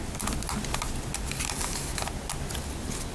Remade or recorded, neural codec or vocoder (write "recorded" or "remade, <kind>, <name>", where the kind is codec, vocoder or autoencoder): recorded